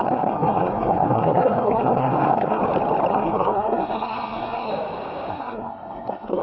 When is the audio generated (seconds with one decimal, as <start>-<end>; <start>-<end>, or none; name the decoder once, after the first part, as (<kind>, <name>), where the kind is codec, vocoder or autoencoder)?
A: 0.0-2.6 (codec, SNAC); 3.1-4.7; 5.3-6.4